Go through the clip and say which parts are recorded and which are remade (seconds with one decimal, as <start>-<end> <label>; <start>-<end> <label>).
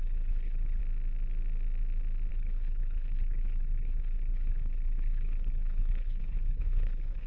0.0-0.8 remade; 0.8-2.3 recorded; 2.3-7.3 remade